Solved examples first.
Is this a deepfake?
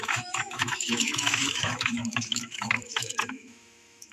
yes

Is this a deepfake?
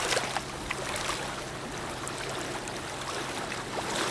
no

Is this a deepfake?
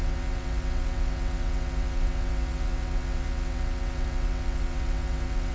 yes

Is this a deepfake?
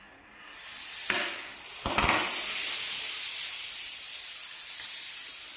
no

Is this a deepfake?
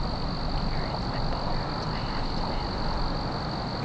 no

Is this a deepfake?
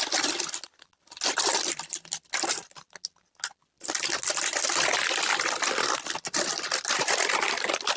no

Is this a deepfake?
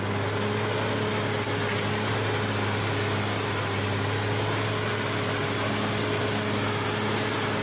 no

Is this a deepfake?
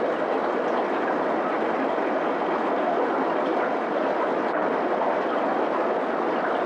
no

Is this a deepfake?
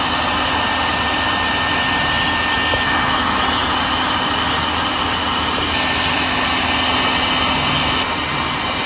no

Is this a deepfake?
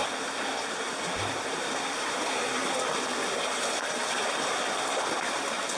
no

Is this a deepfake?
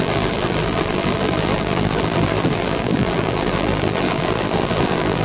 yes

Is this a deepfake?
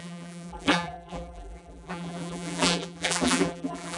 yes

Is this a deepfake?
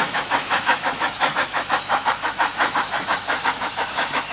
yes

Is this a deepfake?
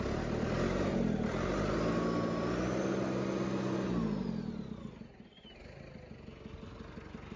no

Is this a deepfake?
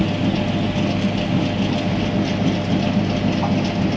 no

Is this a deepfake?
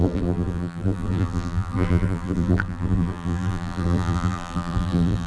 yes